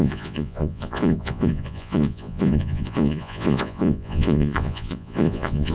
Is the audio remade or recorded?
remade